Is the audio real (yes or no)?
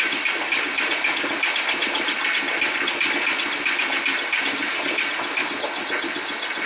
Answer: yes